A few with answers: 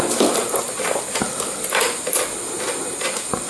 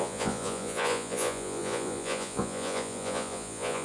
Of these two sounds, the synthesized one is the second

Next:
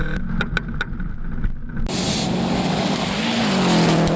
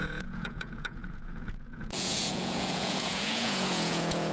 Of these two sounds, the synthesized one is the second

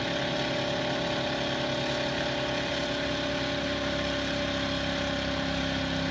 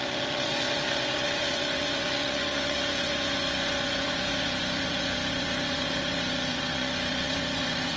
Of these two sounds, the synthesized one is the second